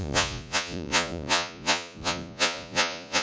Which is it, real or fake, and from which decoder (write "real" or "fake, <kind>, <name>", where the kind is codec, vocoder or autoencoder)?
fake, vocoder, Vocos